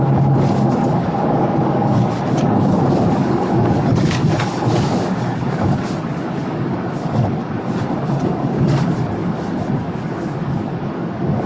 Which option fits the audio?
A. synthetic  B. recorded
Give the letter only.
A